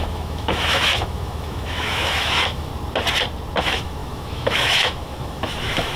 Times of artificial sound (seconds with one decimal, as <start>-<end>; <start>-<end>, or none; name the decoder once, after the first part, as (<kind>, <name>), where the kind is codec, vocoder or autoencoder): 0.0-2.7 (autoencoder, DAC-VAE); 3.6-6.0